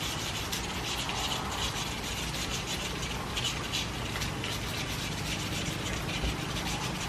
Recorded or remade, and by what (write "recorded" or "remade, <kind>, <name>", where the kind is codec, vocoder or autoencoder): recorded